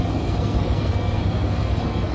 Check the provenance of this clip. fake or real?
fake